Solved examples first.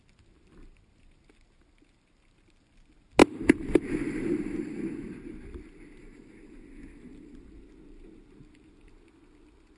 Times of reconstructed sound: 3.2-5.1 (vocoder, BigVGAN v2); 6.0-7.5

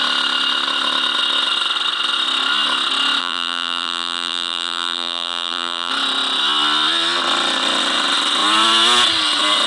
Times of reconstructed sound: 3.2-5.9 (vocoder, BigVGAN v2)

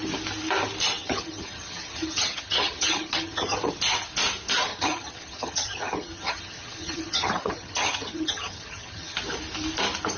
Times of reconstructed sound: 1.0-3.8 (vocoder, HiFi-GAN); 4.7-9.2

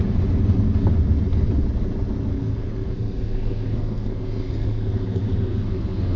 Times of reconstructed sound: 2.3-6.2 (codec, SNAC)

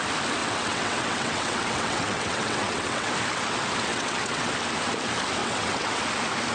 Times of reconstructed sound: 0.4-3.1 (vocoder, WaveNeXt); 3.9-4.5; 5.4-6.0